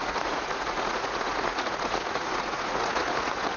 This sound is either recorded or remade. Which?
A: remade